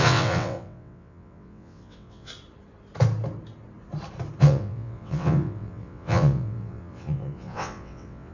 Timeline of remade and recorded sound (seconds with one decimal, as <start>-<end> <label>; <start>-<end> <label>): 0.0-2.3 remade; 2.3-4.4 recorded; 4.4-8.3 remade

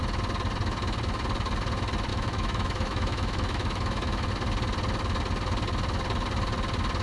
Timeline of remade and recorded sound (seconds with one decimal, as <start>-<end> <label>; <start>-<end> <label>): 0.0-2.1 recorded; 2.1-4.3 remade; 4.3-7.0 recorded

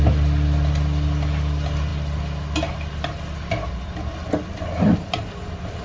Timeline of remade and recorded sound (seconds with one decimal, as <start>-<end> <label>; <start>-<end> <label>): 0.0-5.8 recorded

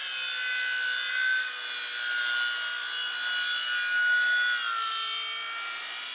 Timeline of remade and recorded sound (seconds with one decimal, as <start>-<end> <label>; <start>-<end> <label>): 0.0-6.1 recorded